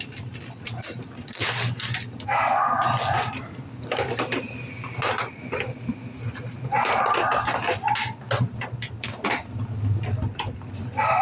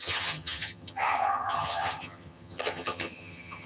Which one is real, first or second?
first